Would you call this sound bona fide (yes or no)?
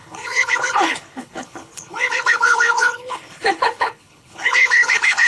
no